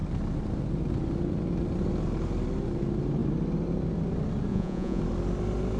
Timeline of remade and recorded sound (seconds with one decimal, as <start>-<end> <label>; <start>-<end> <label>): 0.0-4.5 recorded; 4.5-5.0 remade; 5.0-5.8 recorded